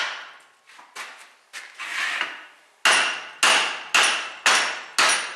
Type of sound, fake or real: real